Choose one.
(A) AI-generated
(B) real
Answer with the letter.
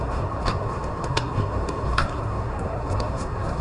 A